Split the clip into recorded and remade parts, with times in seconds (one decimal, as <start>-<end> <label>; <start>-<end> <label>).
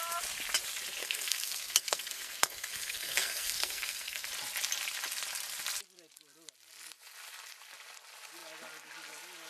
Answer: 0.0-1.0 recorded; 1.0-4.3 remade; 4.3-9.5 recorded